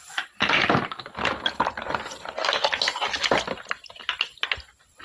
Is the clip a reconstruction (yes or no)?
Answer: no